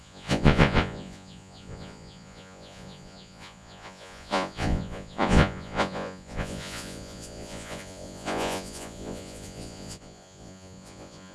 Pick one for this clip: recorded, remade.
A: remade